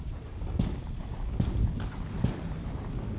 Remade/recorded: recorded